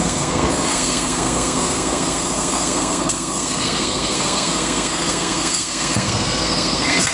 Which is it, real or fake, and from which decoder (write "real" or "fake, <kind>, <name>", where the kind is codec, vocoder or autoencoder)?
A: fake, codec, SNAC